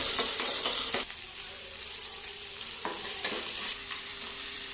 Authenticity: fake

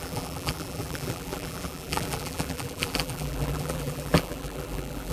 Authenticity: fake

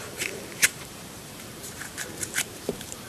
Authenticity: fake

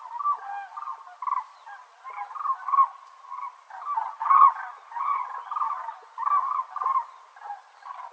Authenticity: real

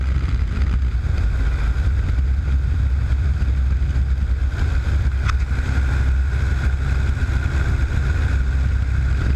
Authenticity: real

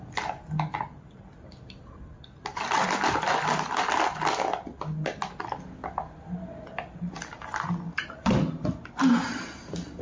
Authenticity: real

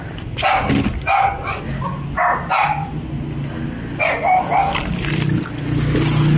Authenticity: real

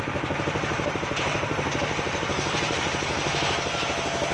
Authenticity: fake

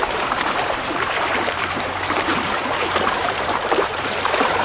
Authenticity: fake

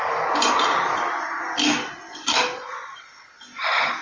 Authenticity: fake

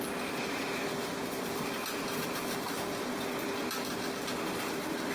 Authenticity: real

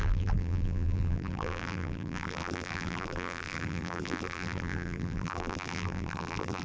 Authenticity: fake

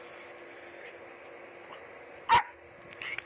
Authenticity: real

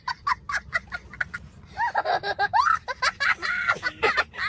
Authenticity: real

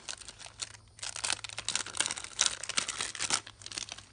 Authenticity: real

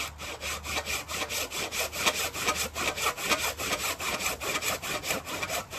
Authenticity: real